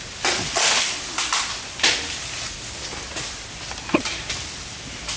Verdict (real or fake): real